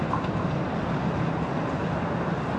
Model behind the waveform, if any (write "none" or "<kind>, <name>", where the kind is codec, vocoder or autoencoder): none